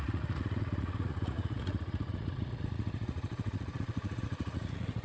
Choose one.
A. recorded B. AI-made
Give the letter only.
B